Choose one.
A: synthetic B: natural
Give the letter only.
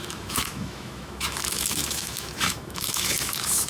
A